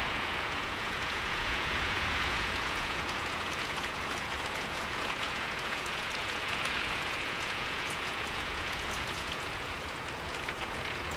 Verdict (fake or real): fake